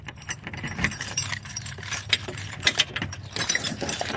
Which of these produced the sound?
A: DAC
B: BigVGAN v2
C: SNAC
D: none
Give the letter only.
B